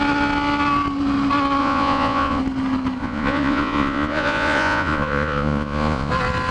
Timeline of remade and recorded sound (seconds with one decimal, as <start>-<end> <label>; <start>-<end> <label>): 0.0-1.6 recorded; 1.6-2.4 remade; 2.4-3.0 recorded; 3.0-6.1 remade; 6.1-6.5 recorded